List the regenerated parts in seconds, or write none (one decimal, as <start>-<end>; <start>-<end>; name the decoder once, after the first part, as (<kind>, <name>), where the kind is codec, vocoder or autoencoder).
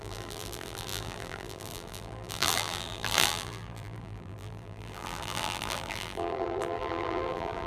0.0-7.7 (vocoder, BigVGAN v2)